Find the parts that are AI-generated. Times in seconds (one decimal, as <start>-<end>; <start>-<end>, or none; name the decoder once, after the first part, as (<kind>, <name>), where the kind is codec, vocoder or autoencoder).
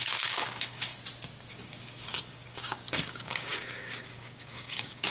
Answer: 0.0-0.9 (codec, DAC); 1.5-5.1